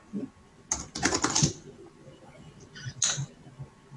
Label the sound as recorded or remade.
recorded